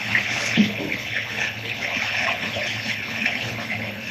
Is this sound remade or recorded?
remade